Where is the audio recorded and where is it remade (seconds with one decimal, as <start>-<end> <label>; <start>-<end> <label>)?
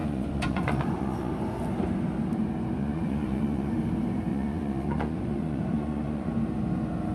0.0-1.3 remade; 1.3-2.8 recorded; 2.8-3.7 remade; 3.7-4.3 recorded; 4.3-6.3 remade; 6.3-7.1 recorded